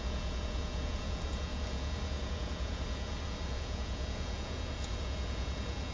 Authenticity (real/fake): fake